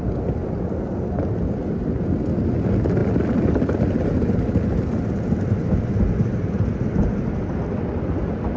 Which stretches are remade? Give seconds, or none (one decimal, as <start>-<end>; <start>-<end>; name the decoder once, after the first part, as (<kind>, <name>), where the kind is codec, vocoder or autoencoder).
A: none